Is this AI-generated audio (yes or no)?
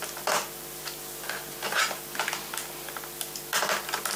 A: no